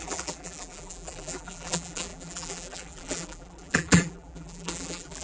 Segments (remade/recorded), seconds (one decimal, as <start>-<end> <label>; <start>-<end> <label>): 0.0-5.2 remade